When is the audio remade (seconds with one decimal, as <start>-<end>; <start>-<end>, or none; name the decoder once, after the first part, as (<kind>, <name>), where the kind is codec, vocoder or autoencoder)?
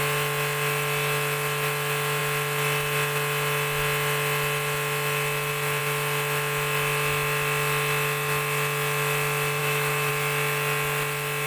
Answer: 9.6-10.1 (autoencoder, DAC-VAE)